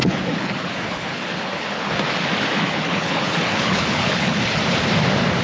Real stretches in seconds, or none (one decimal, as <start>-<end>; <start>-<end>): 1.9-2.5; 4.6-5.4